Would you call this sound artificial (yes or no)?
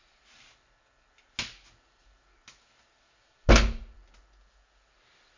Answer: no